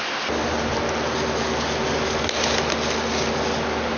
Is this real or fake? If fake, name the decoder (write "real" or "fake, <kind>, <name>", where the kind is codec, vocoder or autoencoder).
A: real